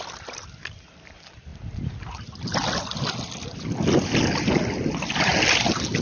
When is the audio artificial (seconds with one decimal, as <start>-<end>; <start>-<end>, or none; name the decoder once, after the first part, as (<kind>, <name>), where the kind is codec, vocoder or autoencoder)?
none